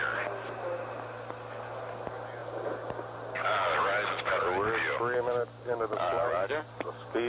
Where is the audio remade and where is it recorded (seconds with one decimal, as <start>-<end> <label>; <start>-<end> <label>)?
0.0-7.3 recorded